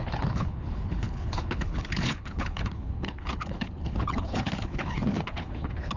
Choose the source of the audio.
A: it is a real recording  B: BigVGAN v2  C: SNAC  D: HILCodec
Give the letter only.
D